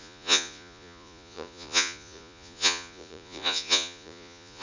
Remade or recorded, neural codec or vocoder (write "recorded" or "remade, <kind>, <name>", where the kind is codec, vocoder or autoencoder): remade, vocoder, Vocos